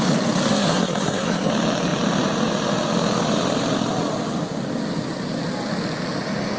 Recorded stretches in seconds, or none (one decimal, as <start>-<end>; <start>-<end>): 0.0-0.5; 1.5-6.6